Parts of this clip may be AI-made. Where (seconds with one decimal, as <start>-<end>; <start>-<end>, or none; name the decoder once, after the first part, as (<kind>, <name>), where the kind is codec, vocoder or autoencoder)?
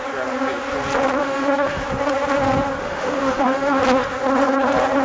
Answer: 1.2-1.8 (autoencoder, DAC-VAE); 2.8-3.8